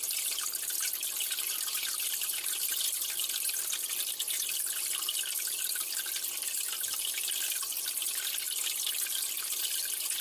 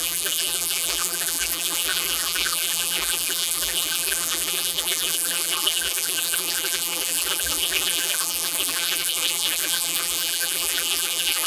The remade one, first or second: second